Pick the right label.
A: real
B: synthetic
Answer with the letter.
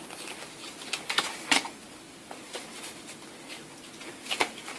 A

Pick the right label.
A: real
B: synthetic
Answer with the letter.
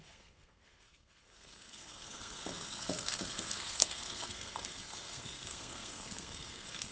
B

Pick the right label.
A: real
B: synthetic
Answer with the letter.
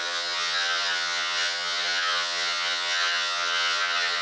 B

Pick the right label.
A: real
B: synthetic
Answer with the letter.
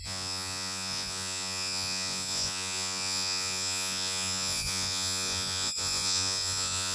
B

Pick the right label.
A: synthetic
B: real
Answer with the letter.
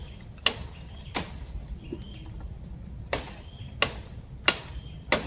B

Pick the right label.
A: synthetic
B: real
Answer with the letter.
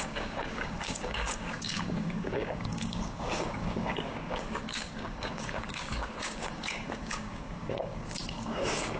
A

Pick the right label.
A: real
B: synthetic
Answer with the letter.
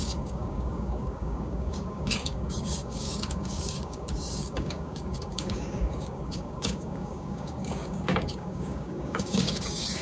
B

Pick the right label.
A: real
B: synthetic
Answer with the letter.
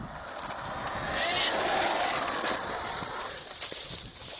A